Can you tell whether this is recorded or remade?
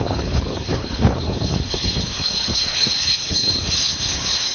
remade